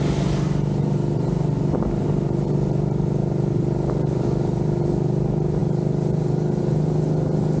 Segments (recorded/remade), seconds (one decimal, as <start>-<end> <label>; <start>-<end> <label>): 0.0-7.6 recorded